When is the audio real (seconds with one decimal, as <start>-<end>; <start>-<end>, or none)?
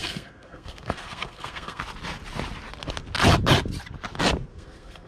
1.8-4.5